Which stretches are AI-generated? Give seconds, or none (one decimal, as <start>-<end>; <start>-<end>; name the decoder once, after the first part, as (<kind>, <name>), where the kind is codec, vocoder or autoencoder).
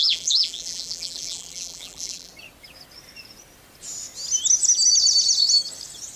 0.0-2.3 (vocoder, BigVGAN v2)